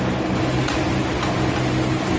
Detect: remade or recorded recorded